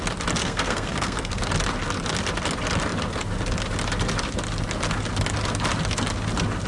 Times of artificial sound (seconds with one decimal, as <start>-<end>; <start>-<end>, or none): 0.4-1.4